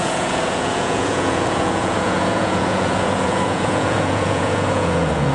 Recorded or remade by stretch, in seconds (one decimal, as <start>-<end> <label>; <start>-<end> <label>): 0.0-5.3 remade